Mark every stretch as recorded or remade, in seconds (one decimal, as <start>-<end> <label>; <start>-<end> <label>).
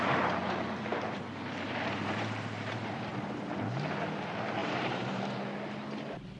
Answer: 0.0-0.9 recorded; 0.9-3.1 remade; 3.1-4.6 recorded; 4.6-5.2 remade; 5.2-6.4 recorded